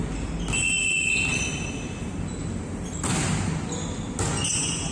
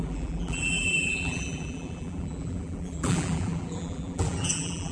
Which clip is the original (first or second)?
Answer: first